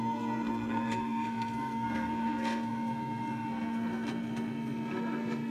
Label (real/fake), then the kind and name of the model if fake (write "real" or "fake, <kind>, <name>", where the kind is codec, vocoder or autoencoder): fake, codec, SNAC